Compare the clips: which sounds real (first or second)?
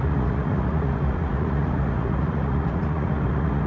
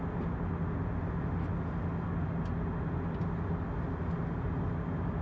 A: second